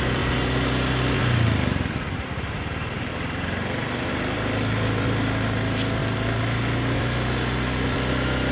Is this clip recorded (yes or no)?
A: yes